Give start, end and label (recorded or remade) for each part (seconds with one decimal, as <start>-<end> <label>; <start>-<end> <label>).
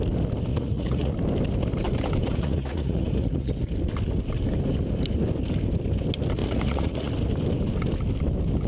0.0-0.5 recorded; 0.5-1.1 remade; 1.1-2.2 recorded; 2.2-3.5 remade; 3.5-6.4 recorded; 6.4-7.1 remade; 7.1-8.7 recorded